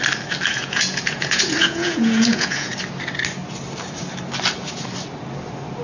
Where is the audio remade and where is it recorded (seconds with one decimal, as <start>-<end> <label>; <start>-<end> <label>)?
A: 0.0-0.5 recorded; 0.5-2.7 remade; 2.7-5.8 recorded